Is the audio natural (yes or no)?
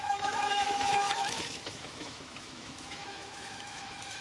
no